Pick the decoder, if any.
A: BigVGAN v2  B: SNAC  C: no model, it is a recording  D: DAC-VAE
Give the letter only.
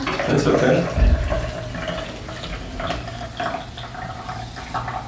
C